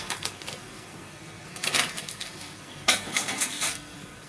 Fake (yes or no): yes